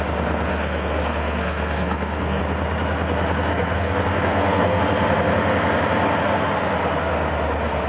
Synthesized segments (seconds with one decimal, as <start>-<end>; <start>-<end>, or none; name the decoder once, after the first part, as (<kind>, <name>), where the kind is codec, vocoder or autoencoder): 0.5-2.4 (codec, SNAC); 3.5-4.8